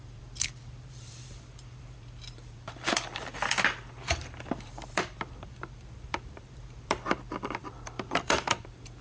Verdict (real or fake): fake